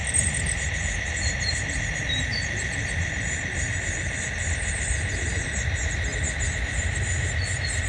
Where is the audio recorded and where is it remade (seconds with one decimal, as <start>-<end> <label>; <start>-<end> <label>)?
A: 0.0-2.3 recorded; 2.3-5.5 remade; 5.5-7.9 recorded